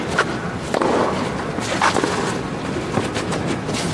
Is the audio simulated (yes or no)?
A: no